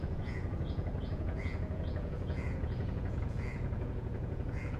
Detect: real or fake fake